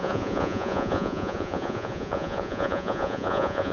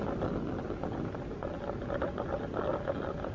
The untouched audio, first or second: second